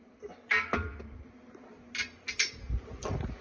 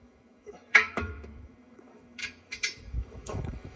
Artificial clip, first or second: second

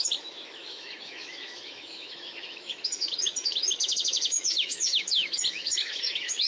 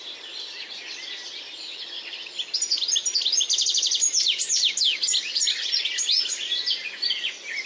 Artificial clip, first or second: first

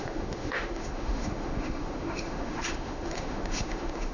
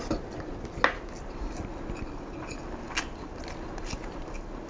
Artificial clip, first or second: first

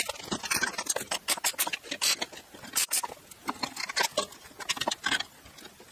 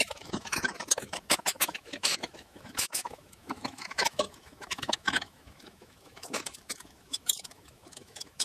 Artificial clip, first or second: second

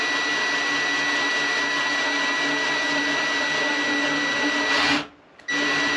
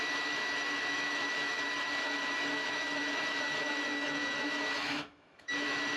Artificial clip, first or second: second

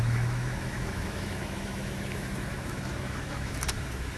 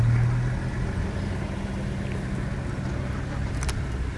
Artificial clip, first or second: first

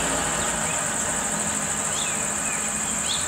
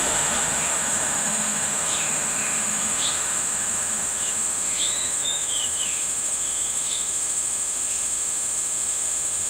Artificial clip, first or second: second